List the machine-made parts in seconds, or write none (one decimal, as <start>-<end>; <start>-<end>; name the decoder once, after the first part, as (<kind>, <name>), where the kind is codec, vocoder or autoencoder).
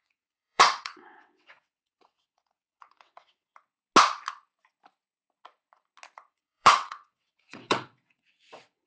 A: 0.0-3.5 (vocoder, WaveNeXt); 6.3-8.9